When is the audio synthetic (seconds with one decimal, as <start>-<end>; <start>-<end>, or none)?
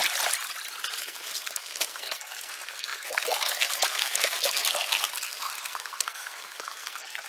1.0-7.3